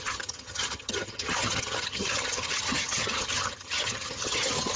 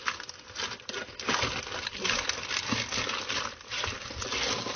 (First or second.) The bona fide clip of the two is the second